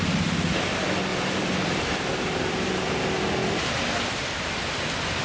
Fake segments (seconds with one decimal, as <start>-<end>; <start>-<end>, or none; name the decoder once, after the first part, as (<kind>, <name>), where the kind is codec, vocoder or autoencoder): 1.1-1.8 (vocoder, BigVGAN v2); 3.4-3.9